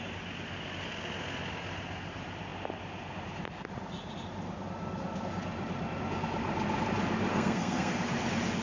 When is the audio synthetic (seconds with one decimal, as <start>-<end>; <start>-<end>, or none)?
7.3-7.9